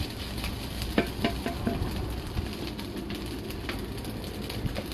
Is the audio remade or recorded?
recorded